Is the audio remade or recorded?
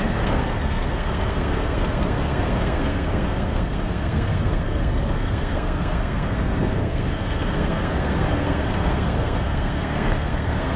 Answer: remade